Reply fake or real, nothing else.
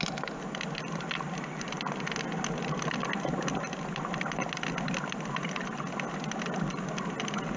real